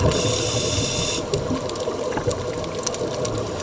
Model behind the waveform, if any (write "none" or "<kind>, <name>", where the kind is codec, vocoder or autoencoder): none